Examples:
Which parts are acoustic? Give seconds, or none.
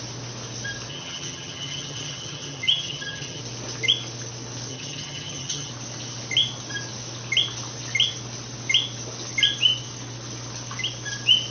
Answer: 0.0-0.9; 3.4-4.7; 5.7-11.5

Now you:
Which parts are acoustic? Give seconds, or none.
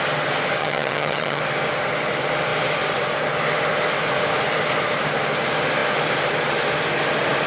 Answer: 0.0-0.6; 1.4-7.5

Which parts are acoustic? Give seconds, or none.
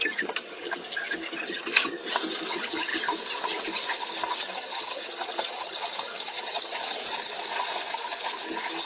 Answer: 0.8-1.5; 2.0-2.5; 2.9-4.4; 7.0-8.9